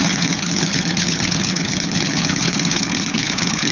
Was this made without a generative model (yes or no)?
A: no